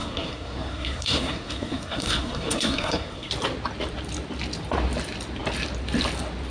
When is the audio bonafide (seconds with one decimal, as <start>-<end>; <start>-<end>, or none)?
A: 3.3-6.5